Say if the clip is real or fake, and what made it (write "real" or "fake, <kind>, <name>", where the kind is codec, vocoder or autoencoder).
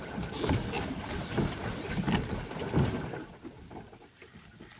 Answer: real